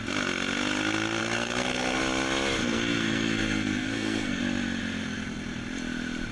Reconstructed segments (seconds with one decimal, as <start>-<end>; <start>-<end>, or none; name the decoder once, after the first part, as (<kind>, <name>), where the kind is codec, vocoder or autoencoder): 1.2-2.0 (codec, SNAC); 2.6-4.4